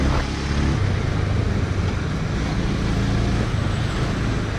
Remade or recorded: recorded